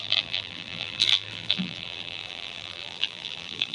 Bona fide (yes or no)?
no